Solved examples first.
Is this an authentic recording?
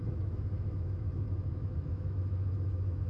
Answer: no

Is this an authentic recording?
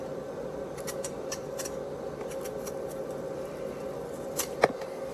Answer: yes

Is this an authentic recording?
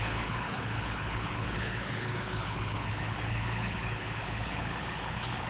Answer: no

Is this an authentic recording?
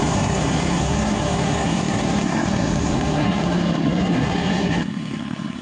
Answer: no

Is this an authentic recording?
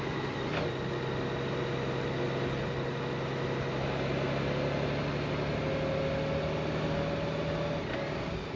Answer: yes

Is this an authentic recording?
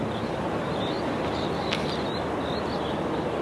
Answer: yes